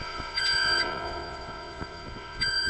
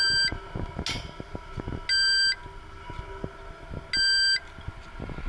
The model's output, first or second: first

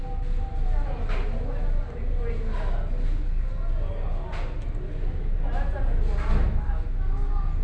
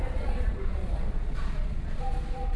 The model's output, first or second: second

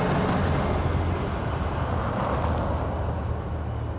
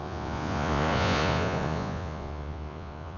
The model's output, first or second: second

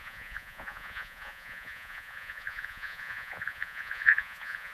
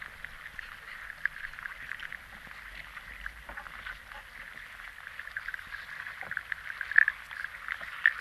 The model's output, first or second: first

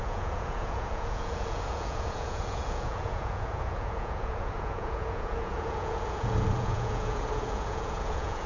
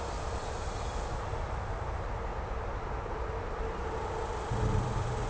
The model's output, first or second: first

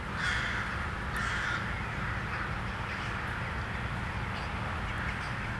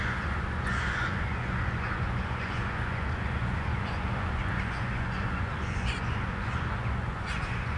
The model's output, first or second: second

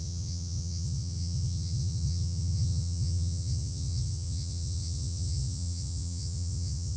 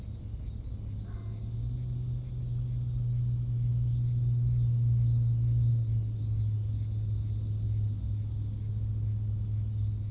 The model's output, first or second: first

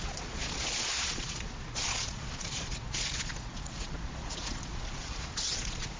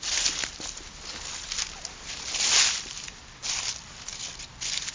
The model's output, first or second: first